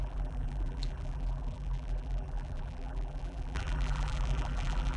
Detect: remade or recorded remade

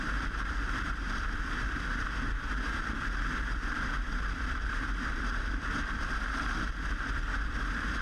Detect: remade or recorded remade